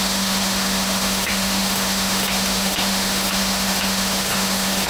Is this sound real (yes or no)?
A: no